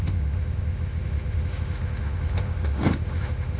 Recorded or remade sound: remade